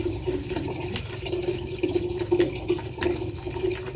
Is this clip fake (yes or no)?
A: no